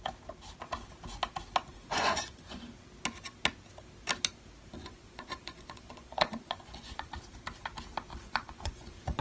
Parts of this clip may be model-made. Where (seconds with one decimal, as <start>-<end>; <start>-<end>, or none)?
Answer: 1.7-2.7; 4.8-7.1; 8.1-9.2